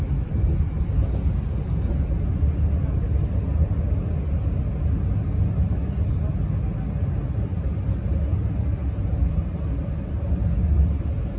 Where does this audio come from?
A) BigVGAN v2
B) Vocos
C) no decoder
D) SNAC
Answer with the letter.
C